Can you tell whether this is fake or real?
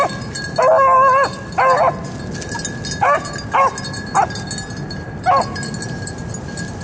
real